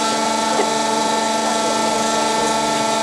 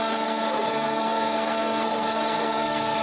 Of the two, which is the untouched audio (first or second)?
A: first